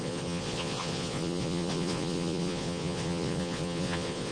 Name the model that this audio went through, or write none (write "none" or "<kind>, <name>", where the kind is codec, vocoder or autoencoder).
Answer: vocoder, Vocos